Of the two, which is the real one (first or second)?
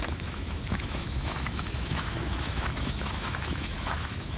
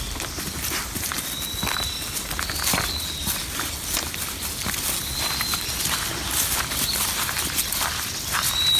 second